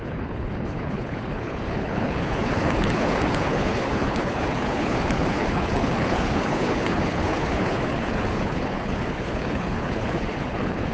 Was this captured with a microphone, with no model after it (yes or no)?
no